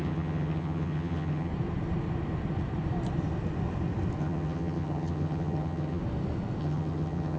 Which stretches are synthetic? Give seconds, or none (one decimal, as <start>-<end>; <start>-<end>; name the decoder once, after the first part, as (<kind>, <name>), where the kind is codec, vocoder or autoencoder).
0.0-1.5 (vocoder, HiFi-GAN); 4.2-6.0; 6.6-7.4